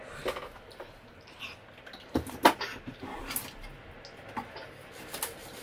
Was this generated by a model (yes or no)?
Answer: no